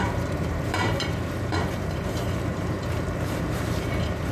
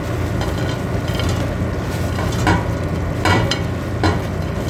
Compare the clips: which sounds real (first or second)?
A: second